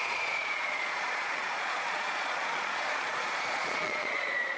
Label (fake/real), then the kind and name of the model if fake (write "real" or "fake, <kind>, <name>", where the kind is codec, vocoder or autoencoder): fake, vocoder, Vocos